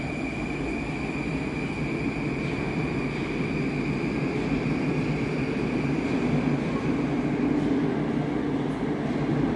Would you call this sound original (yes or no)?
yes